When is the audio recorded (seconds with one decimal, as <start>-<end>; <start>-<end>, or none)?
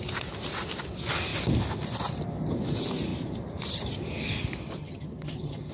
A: 0.0-4.8